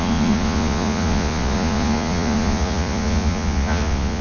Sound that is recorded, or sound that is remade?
remade